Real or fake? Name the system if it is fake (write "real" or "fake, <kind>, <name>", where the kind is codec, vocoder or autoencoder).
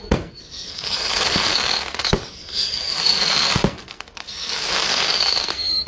fake, codec, SNAC